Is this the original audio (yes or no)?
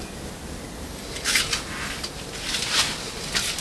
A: yes